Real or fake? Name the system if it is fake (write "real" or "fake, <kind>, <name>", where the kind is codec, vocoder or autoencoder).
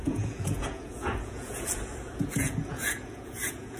fake, vocoder, Vocos